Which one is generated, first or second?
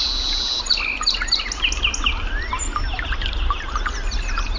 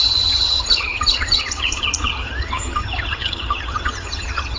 second